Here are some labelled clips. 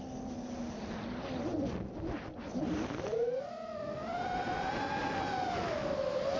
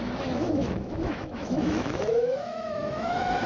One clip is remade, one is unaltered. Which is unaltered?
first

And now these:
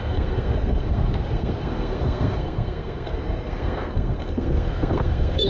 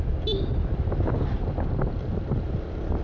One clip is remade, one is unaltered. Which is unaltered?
second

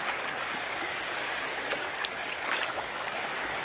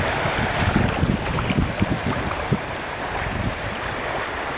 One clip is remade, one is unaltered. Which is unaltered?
second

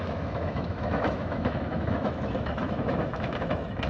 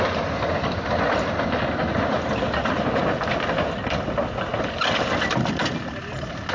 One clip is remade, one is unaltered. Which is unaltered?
second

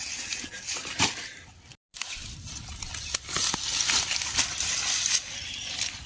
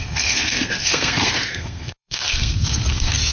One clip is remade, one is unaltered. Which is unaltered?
first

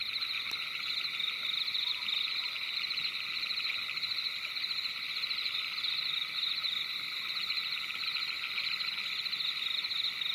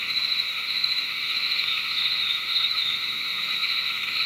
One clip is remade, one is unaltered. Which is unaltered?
first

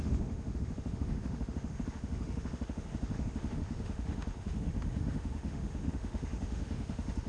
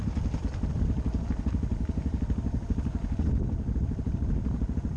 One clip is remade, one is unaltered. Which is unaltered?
second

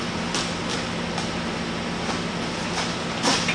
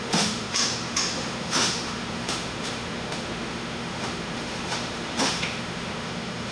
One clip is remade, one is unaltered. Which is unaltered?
first